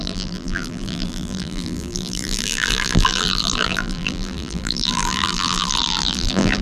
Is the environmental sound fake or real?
fake